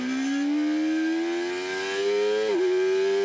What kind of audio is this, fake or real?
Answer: real